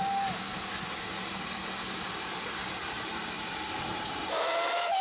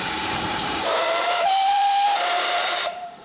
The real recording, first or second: first